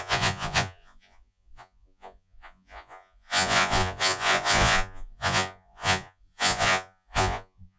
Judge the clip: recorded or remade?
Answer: remade